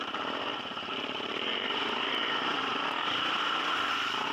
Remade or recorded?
remade